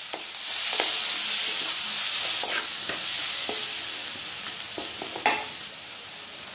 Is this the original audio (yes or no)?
yes